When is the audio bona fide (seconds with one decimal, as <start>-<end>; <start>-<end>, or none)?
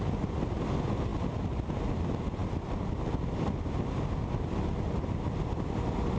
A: 0.0-6.2